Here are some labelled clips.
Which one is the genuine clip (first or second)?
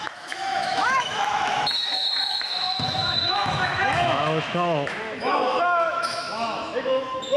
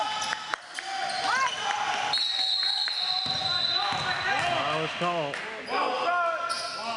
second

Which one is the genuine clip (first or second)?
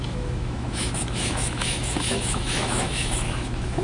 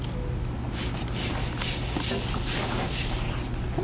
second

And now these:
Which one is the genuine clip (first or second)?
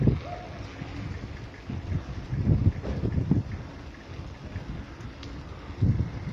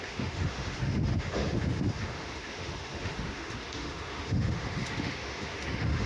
first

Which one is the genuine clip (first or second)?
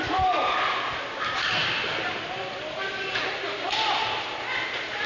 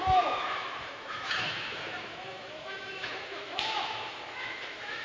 first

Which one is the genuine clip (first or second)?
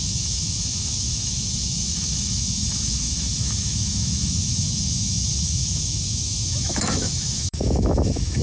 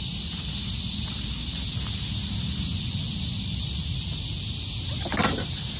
second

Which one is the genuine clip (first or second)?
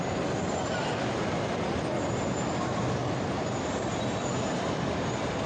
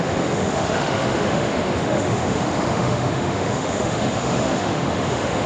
first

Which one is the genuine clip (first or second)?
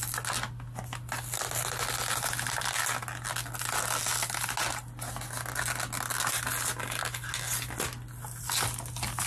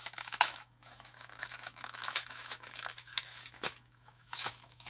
first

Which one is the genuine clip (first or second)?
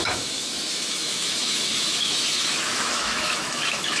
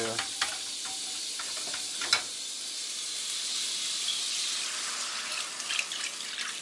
second